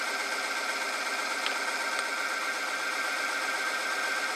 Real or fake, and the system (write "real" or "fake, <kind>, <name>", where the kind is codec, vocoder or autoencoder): real